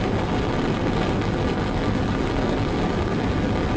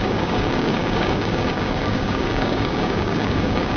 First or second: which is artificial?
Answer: second